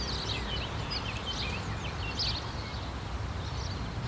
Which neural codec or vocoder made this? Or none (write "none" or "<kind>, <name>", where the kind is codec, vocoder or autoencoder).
none